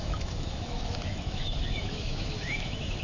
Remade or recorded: remade